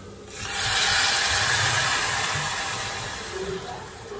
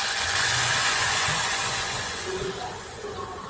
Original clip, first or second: first